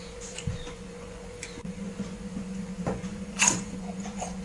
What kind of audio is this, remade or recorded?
remade